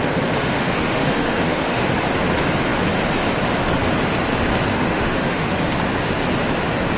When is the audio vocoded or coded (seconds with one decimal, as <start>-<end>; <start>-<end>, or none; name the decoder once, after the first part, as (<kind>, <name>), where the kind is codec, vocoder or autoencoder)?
0.4-1.9 (autoencoder, DAC-VAE); 4.7-5.7